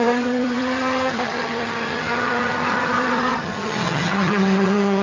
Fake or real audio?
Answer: fake